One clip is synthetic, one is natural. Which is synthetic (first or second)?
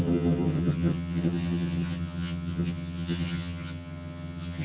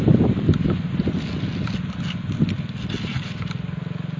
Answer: first